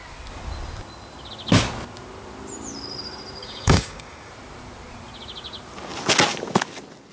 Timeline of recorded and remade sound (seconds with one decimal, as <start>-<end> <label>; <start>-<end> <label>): 0.0-3.4 recorded; 3.4-4.3 remade; 4.3-7.1 recorded